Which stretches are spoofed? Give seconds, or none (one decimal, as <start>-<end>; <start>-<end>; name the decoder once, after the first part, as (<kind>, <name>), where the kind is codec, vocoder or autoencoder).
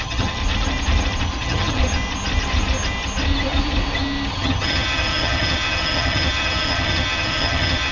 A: 0.0-0.4 (vocoder, HiFi-GAN); 1.4-1.8; 4.3-7.9